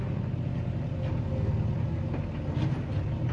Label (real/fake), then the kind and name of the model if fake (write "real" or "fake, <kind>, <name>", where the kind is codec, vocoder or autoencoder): real